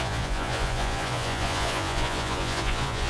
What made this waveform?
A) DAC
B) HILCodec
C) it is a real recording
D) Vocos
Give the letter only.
D